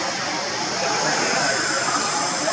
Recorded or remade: recorded